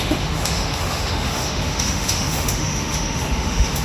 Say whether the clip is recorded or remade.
remade